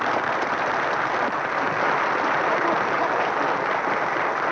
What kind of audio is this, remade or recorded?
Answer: recorded